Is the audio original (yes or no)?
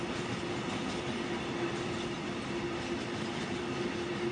yes